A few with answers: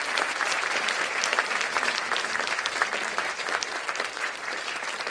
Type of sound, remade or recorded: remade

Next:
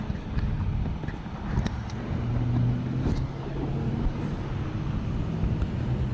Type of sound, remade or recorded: recorded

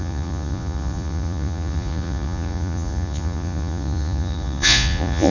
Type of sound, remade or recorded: remade